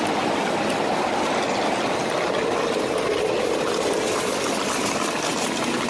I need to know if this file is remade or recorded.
recorded